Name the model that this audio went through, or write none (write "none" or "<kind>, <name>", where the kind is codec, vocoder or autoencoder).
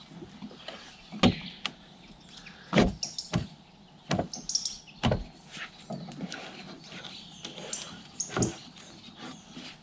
none